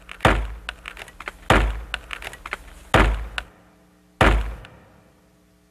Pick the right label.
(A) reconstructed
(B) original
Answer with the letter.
B